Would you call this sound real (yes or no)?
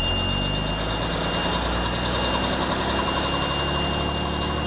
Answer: yes